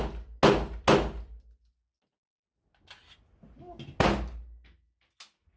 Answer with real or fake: real